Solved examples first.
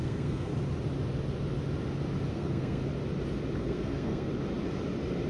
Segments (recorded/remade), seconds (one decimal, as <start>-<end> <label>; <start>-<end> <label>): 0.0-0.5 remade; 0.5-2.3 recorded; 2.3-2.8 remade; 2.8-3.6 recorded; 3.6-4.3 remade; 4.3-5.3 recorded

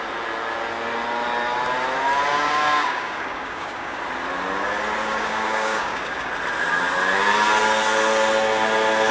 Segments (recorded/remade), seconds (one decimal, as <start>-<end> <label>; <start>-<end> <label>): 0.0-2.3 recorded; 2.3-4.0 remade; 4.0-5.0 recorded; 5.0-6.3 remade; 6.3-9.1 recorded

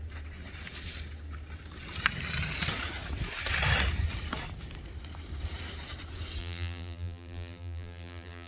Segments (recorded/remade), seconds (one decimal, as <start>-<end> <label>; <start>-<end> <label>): 0.0-6.4 recorded; 6.4-8.5 remade

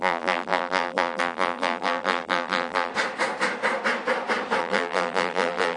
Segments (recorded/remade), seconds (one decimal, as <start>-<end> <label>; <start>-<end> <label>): 0.0-2.9 remade; 2.9-4.6 recorded; 4.6-5.8 remade

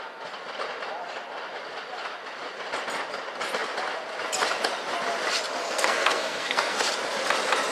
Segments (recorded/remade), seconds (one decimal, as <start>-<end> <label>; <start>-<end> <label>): 0.0-5.6 recorded; 5.6-6.9 remade; 6.9-7.7 recorded

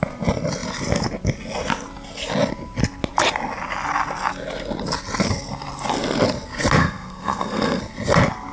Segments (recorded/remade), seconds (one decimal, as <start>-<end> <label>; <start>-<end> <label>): 0.0-6.8 recorded; 6.8-7.8 remade; 7.8-8.5 recorded